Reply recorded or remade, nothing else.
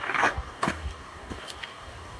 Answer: remade